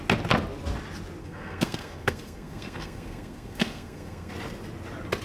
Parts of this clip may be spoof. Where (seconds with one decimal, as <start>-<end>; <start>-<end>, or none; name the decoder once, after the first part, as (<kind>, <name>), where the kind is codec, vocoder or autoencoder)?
1.2-4.3 (codec, SNAC)